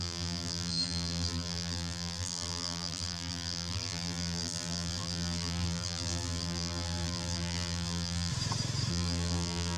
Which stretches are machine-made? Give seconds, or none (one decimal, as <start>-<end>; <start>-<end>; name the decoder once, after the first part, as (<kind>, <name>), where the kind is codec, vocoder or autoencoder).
0.0-8.3 (vocoder, BigVGAN v2); 8.9-9.8